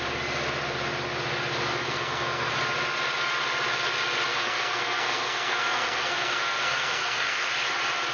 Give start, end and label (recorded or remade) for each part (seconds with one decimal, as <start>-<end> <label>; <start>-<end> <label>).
0.0-1.7 recorded; 1.7-2.5 remade; 2.5-4.3 recorded; 4.3-7.5 remade; 7.5-8.1 recorded